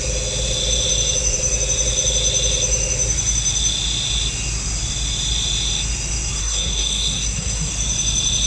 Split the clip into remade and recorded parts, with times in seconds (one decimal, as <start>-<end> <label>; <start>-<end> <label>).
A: 0.0-6.4 recorded; 6.4-7.7 remade; 7.7-8.5 recorded